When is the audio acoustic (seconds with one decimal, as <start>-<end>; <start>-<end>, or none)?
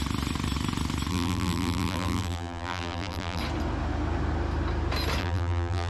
0.0-1.1; 3.4-5.2